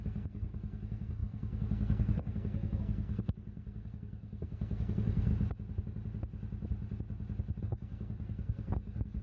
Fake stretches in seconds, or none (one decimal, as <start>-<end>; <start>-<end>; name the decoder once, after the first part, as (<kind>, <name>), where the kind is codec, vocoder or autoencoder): 0.0-5.3 (codec, SNAC); 7.6-9.2